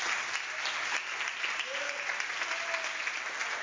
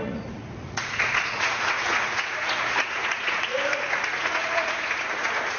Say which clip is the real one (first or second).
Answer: first